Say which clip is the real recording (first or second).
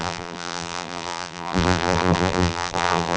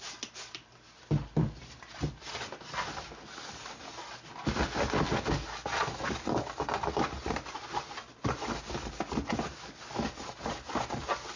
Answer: second